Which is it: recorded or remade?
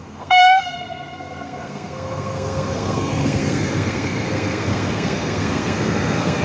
remade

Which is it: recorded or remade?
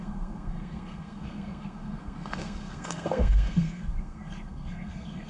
remade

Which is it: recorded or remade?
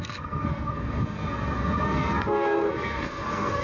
remade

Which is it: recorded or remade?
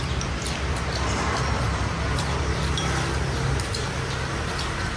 recorded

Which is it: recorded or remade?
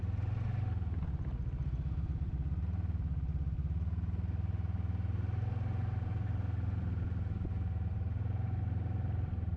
recorded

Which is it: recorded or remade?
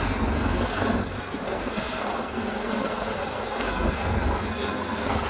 remade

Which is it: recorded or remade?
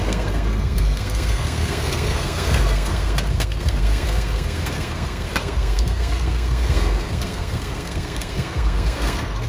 remade